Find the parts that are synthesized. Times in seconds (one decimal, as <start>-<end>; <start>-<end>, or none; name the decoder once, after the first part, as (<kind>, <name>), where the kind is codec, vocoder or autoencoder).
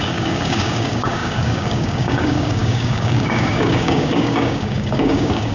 0.0-5.5 (codec, DAC)